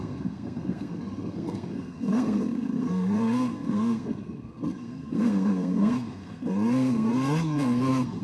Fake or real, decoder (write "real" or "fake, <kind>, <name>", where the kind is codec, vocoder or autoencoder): fake, codec, SNAC